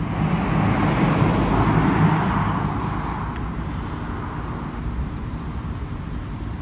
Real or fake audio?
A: real